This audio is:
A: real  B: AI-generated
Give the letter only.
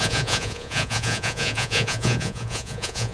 B